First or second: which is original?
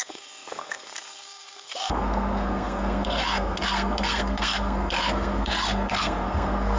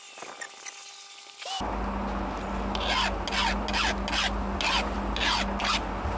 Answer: second